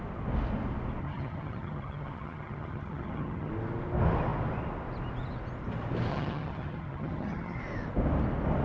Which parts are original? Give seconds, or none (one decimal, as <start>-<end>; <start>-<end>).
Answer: 0.0-1.0; 3.5-6.1; 7.6-8.6